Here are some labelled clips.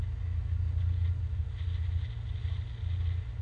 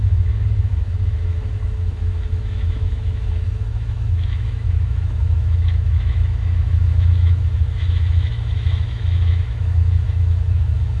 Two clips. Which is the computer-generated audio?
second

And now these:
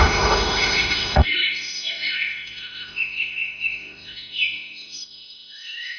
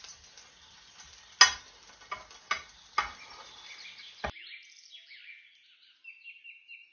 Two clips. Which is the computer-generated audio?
first